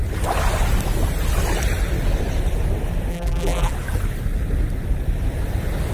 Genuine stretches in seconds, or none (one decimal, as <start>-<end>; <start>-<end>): 0.0-3.1; 3.7-5.9